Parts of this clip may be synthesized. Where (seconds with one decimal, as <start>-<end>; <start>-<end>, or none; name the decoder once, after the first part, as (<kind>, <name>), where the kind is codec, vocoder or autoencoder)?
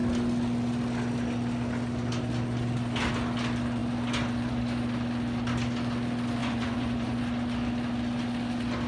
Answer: 6.4-7.2 (vocoder, Vocos)